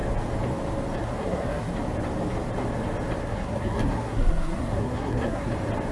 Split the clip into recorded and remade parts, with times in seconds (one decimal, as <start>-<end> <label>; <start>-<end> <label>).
0.0-1.0 recorded; 1.0-1.7 remade; 1.7-3.2 recorded; 3.2-5.5 remade; 5.5-5.9 recorded